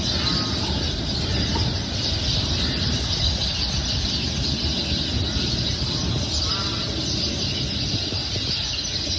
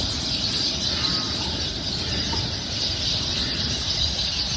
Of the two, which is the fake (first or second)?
second